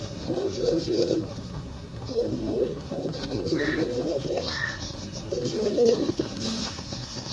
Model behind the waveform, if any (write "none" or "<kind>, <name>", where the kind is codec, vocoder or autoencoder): codec, SNAC